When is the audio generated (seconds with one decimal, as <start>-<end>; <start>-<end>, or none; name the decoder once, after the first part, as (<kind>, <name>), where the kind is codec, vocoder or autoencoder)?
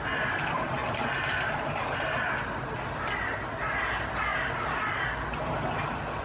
none